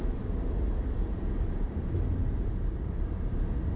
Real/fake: fake